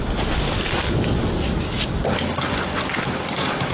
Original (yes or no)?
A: yes